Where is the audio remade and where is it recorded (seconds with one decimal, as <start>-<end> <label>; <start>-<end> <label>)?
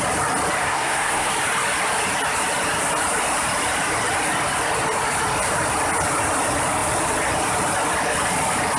0.0-0.6 recorded; 0.6-1.3 remade; 1.3-8.8 recorded